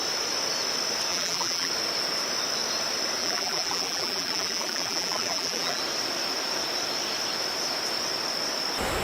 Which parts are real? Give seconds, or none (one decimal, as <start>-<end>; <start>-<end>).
0.0-1.1; 1.7-3.2; 5.8-9.0